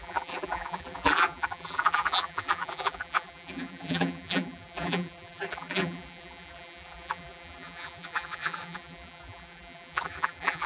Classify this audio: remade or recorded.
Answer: remade